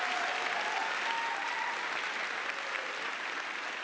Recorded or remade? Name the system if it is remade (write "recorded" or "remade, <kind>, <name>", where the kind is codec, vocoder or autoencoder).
recorded